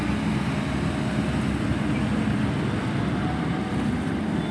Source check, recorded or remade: recorded